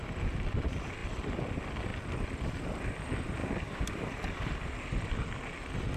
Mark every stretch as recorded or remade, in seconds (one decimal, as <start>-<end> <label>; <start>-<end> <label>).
0.0-1.0 recorded; 1.0-1.5 remade; 1.5-1.9 recorded; 1.9-2.8 remade; 2.8-3.4 recorded; 3.4-5.1 remade; 5.1-6.0 recorded